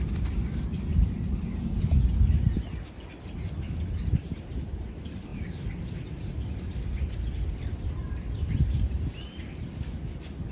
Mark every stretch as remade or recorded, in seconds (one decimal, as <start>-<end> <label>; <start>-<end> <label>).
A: 0.0-10.5 recorded